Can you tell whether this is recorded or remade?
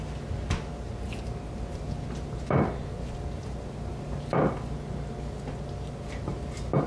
recorded